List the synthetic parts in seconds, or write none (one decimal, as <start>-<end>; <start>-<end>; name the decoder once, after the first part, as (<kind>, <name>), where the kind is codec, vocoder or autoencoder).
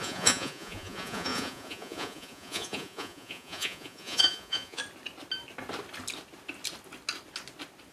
0.0-4.8 (vocoder, Vocos)